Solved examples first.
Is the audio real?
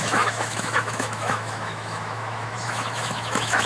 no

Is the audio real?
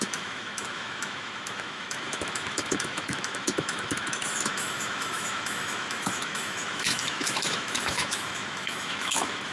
no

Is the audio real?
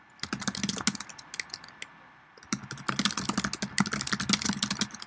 yes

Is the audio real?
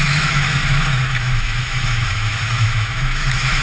no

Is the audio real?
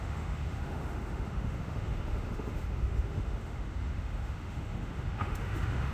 no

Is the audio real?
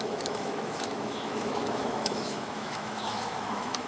no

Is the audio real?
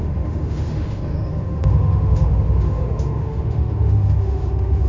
no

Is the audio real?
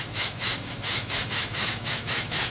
no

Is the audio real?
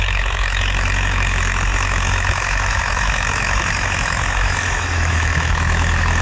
no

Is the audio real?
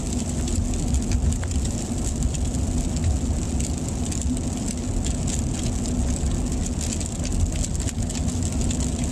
yes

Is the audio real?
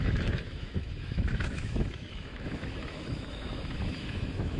no